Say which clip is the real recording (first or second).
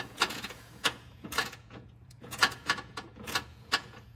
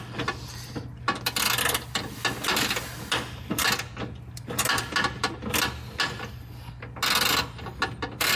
second